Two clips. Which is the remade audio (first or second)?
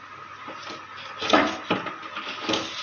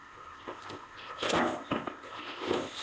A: second